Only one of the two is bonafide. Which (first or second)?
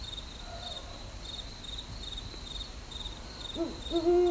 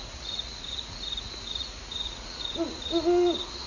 first